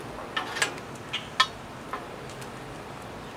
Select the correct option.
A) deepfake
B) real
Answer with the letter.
B